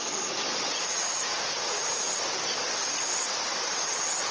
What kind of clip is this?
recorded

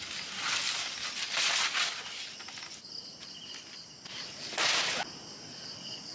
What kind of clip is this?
recorded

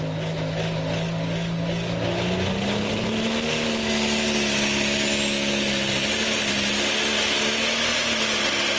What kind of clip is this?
recorded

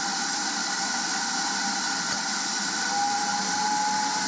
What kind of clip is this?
remade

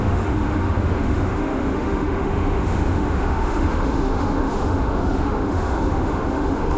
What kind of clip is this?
remade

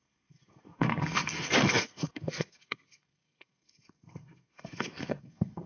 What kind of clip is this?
remade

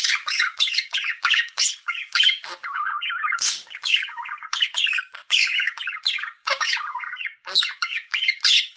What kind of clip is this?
remade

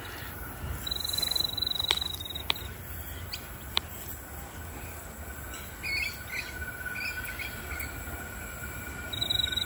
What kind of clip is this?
recorded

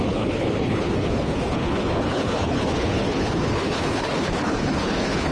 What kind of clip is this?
remade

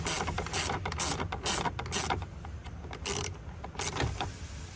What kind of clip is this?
recorded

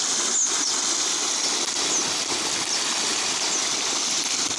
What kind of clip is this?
recorded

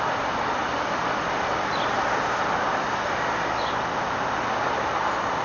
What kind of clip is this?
recorded